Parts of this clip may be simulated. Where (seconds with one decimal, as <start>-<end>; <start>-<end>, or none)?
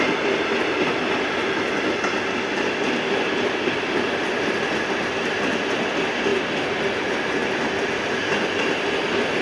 6.3-6.8